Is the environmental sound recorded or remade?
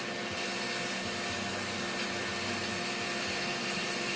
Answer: recorded